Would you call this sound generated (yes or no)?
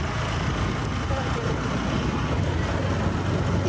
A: no